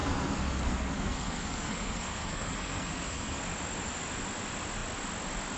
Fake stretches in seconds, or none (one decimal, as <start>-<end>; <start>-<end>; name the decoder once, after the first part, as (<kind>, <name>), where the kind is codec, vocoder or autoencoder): 0.0-3.4 (codec, SNAC)